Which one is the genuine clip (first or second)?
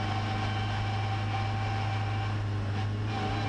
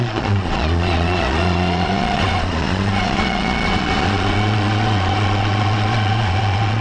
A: first